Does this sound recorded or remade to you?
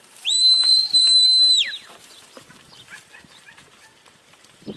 remade